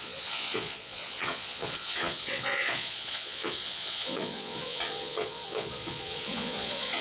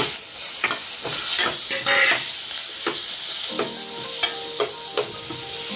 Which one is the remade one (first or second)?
first